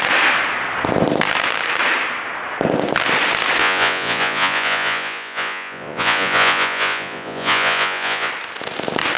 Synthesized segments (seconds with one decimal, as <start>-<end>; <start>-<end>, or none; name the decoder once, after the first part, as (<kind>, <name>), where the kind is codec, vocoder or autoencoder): 3.6-8.3 (vocoder, Vocos)